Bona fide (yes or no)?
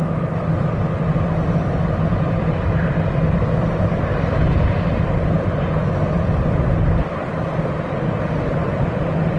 yes